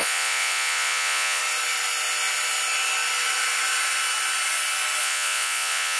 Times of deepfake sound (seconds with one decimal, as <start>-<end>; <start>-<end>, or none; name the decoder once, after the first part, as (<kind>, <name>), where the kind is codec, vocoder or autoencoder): 0.0-1.4 (vocoder, Vocos); 5.0-6.0